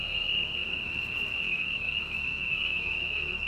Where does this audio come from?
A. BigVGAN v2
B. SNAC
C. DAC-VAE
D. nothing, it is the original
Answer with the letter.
B